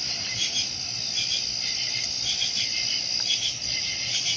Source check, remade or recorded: recorded